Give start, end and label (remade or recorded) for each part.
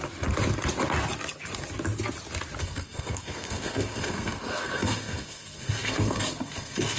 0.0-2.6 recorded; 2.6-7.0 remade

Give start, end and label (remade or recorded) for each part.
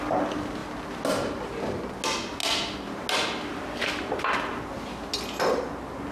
0.0-6.1 recorded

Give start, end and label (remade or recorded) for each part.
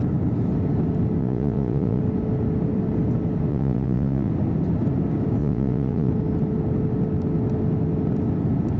0.0-1.2 recorded; 1.2-2.0 remade; 2.0-3.5 recorded; 3.5-4.3 remade; 4.3-5.4 recorded; 5.4-6.1 remade; 6.1-8.8 recorded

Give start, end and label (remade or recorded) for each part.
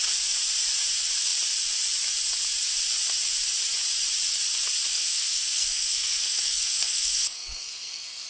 0.0-4.9 recorded; 4.9-8.3 remade